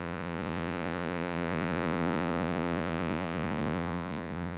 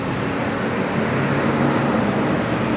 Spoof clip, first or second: first